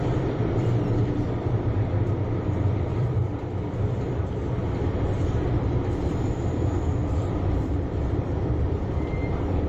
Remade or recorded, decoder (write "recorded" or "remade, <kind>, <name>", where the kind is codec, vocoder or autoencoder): remade, vocoder, BigVGAN v2